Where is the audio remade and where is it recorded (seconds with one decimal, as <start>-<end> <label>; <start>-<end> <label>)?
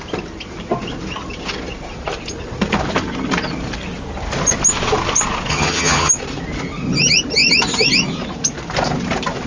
0.0-5.5 recorded; 5.5-6.1 remade; 6.1-9.5 recorded